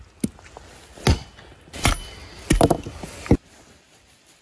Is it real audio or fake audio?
real